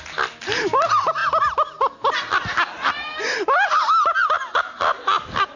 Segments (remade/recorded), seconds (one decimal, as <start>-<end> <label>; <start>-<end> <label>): 0.0-5.6 recorded